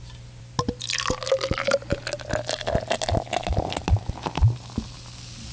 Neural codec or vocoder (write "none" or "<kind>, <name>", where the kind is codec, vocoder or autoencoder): none